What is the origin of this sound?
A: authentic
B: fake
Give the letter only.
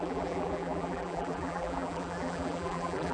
B